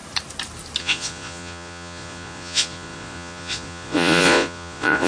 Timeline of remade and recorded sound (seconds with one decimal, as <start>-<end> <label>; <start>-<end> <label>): 0.0-0.8 recorded; 0.8-5.1 remade